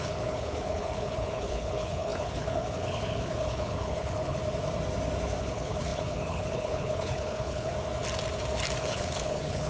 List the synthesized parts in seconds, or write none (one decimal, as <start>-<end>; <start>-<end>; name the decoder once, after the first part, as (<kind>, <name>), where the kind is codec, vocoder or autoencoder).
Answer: 0.0-4.4 (codec, HILCodec); 5.4-7.7; 8.8-9.7